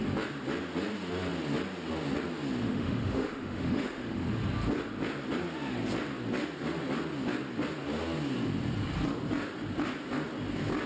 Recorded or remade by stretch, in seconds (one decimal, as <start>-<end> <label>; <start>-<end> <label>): 0.0-2.6 recorded; 2.6-4.2 remade; 4.2-10.9 recorded